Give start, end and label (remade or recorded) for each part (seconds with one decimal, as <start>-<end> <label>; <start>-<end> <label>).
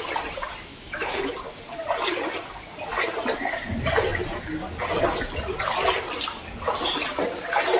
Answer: 0.0-0.7 recorded; 0.7-1.3 remade; 1.3-7.8 recorded